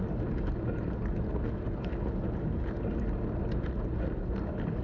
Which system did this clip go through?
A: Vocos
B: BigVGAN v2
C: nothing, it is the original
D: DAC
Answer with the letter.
C